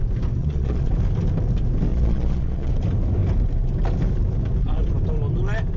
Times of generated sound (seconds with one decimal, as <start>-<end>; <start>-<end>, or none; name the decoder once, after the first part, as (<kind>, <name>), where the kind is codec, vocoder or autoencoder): 0.4-0.9 (vocoder, Vocos); 1.9-2.7